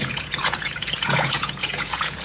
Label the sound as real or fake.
fake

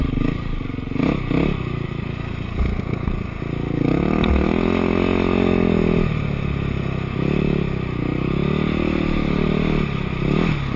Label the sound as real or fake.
real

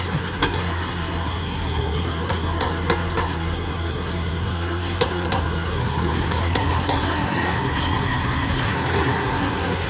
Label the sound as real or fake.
fake